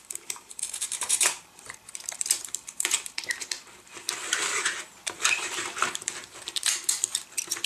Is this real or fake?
fake